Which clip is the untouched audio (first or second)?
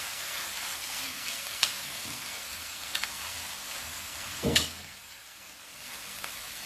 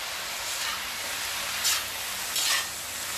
second